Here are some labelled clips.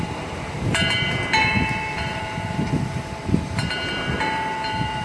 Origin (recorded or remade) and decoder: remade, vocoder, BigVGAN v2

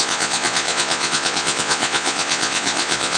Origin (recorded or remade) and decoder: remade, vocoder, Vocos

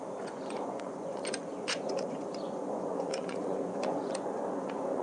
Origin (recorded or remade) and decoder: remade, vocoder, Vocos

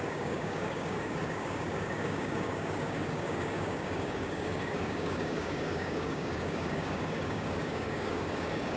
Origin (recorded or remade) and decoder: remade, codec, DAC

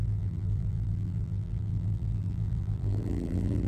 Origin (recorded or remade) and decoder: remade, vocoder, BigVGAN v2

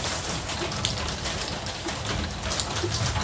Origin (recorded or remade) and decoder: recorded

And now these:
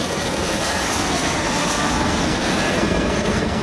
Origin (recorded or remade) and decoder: remade, codec, SNAC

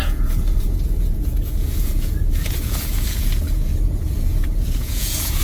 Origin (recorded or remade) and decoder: remade, vocoder, Vocos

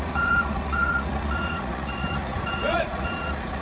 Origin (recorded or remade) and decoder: remade, vocoder, Vocos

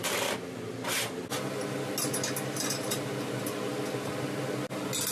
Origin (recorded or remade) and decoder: recorded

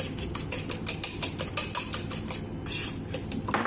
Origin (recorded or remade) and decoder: recorded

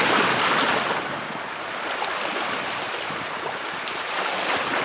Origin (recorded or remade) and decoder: recorded